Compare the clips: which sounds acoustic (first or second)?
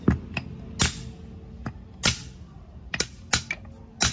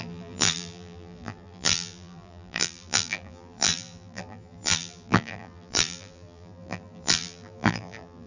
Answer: first